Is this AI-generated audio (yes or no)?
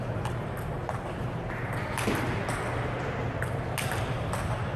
no